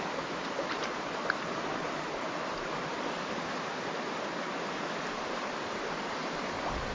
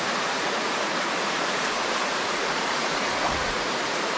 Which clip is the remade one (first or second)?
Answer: second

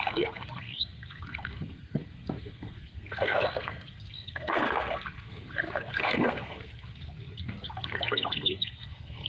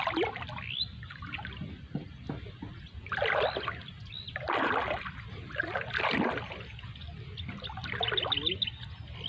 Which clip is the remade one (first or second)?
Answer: first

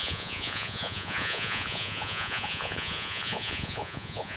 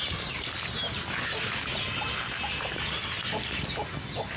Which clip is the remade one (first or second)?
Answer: first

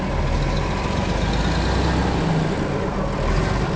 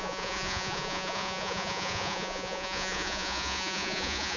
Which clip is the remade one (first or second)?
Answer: second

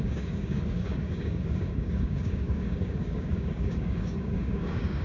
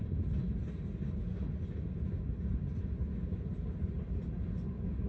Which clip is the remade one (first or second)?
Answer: first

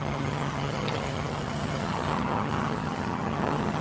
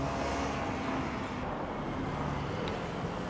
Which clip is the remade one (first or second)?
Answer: first